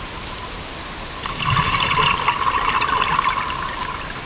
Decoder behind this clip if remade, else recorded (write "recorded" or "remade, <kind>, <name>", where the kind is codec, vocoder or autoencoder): recorded